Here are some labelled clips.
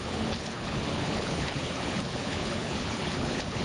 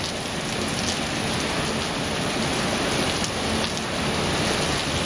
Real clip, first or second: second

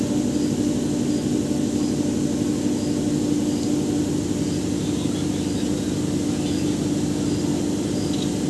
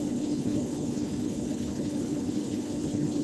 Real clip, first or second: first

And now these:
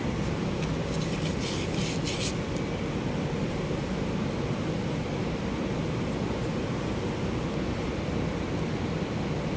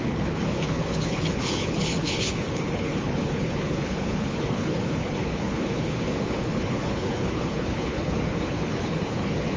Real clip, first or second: first